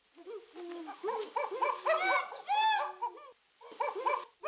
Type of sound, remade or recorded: recorded